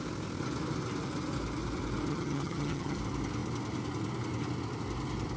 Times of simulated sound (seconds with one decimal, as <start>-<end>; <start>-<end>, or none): 2.1-3.0